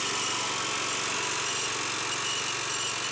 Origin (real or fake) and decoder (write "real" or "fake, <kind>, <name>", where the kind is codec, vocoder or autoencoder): real